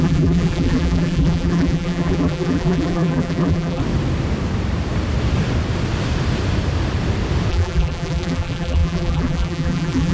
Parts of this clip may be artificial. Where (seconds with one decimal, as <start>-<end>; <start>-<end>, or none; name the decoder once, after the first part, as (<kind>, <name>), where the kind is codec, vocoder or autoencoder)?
0.0-3.8 (vocoder, BigVGAN v2); 7.5-10.1